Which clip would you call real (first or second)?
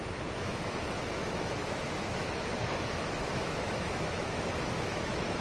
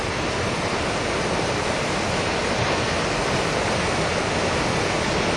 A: second